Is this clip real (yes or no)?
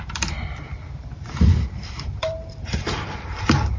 no